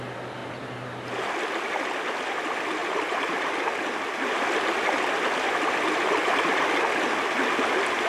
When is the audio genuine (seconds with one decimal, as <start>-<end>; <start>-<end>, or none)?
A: 0.0-8.1